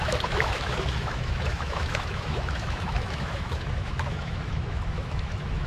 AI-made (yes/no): yes